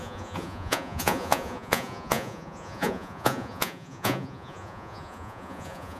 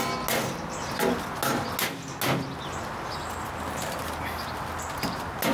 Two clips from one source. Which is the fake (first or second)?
first